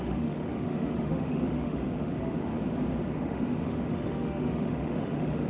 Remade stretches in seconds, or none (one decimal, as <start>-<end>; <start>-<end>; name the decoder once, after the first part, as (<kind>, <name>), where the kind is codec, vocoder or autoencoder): 0.0-2.5 (autoencoder, DAC-VAE); 3.1-5.5